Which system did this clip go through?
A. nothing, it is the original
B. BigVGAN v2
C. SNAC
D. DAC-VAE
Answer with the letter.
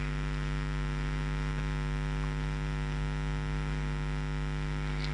A